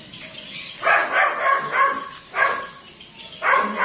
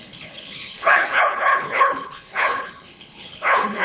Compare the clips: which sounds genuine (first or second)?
first